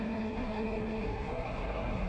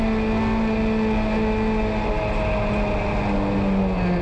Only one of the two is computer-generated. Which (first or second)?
first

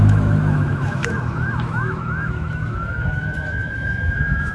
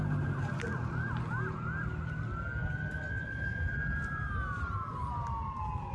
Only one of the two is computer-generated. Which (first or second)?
first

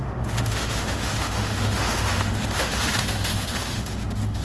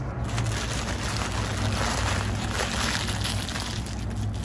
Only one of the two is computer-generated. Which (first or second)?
first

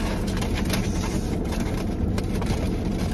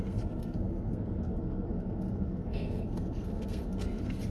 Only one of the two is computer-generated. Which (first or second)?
second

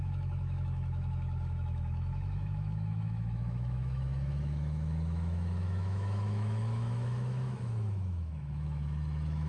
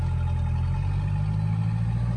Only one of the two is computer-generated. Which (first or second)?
first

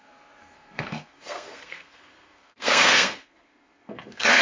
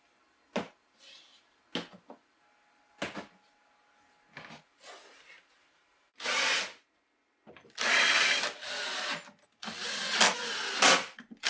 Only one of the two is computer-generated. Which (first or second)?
first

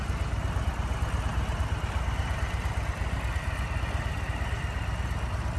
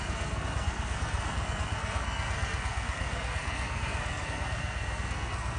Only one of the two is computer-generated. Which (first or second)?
second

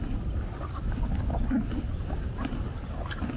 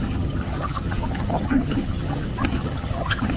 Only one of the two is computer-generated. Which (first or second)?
second